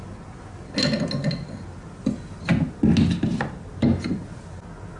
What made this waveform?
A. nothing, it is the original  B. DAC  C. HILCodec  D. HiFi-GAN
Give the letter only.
A